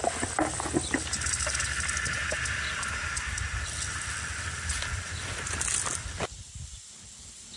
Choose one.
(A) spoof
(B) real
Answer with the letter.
B